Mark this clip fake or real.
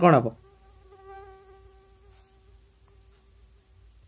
real